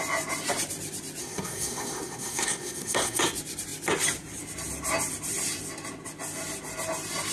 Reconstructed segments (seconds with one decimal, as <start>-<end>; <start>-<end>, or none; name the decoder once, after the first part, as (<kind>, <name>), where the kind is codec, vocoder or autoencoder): 1.2-3.2 (codec, SNAC)